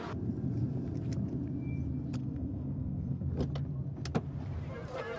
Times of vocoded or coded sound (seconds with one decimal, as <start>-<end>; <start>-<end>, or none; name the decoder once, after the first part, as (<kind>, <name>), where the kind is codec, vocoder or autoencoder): 2.2-3.3 (codec, SNAC)